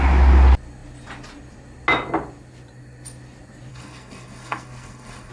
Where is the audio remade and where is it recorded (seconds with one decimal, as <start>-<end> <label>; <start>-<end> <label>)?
0.0-3.7 recorded; 3.7-5.3 remade